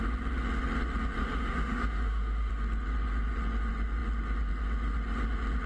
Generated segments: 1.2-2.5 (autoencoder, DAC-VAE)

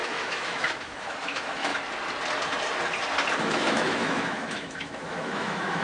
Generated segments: 0.0-1.7 (autoencoder, DAC-VAE); 3.4-5.8

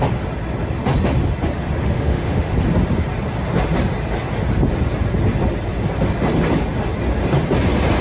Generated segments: 1.8-2.5 (autoencoder, DAC-VAE)

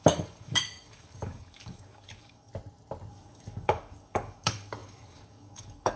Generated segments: 0.0-2.5 (codec, DAC); 3.1-6.0

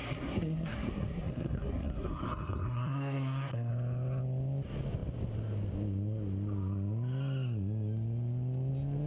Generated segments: 0.0-3.7 (codec, SNAC)

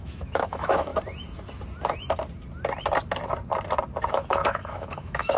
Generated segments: 0.0-0.9 (autoencoder, DAC-VAE); 4.1-5.4